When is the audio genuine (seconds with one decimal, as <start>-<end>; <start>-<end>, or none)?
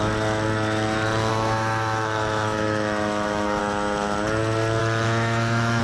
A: 0.0-1.3; 3.6-4.8